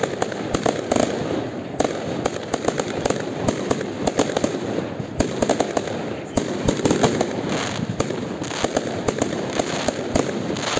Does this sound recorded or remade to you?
recorded